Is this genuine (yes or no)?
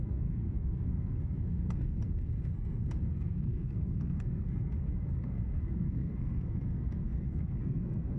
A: no